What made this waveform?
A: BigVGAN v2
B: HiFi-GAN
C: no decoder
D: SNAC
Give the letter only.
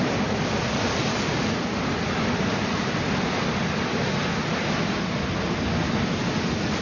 C